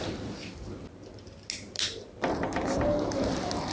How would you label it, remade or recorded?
recorded